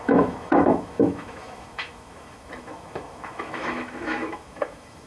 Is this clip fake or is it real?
fake